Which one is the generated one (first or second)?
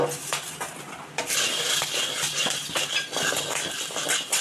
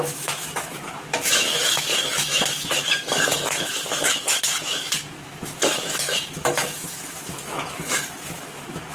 second